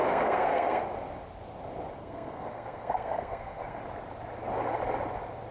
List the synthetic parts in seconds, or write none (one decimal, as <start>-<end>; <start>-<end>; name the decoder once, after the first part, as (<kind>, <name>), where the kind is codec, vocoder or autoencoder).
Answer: 0.0-0.8 (codec, SNAC); 2.0-3.8